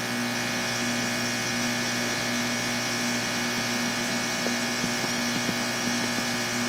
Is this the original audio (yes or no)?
yes